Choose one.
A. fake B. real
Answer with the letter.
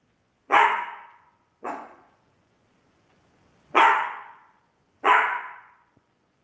A